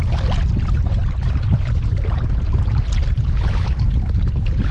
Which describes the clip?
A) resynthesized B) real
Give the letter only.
B